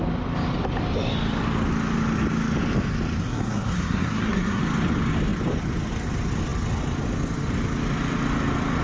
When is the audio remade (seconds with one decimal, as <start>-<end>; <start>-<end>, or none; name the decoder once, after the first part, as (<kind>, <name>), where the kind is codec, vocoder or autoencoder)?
3.2-4.6 (codec, SNAC)